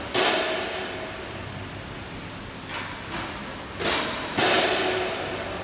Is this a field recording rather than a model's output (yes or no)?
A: yes